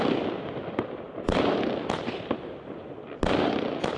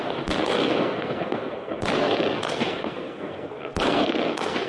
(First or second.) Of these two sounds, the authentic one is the first